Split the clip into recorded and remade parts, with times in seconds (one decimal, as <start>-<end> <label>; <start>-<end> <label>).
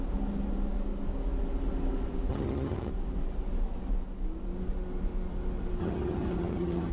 0.0-2.3 recorded; 2.3-2.9 remade; 2.9-5.8 recorded; 5.8-6.9 remade